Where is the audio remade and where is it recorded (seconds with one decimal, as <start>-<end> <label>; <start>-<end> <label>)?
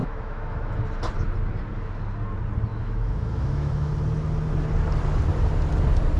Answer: 0.0-0.8 remade; 0.8-2.7 recorded; 2.7-3.9 remade; 3.9-6.2 recorded